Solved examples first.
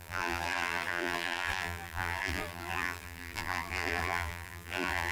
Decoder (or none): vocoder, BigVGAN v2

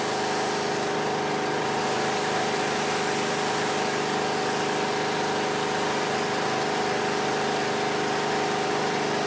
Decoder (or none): none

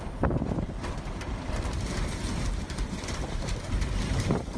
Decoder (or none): vocoder, BigVGAN v2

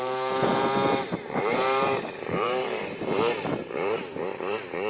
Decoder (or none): vocoder, BigVGAN v2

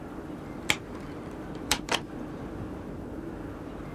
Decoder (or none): vocoder, BigVGAN v2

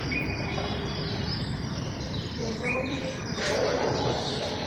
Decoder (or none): vocoder, BigVGAN v2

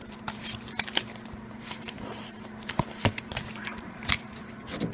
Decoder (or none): vocoder, BigVGAN v2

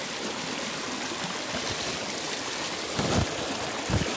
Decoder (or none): none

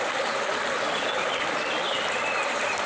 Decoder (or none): none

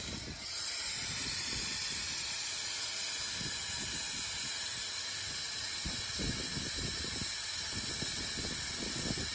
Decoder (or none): none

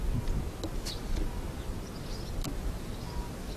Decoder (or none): none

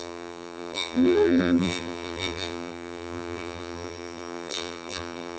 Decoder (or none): vocoder, BigVGAN v2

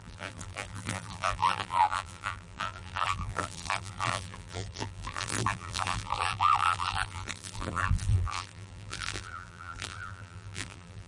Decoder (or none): vocoder, BigVGAN v2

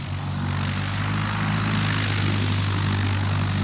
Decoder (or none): none